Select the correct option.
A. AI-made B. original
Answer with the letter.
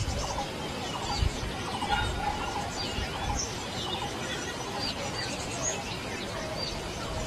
B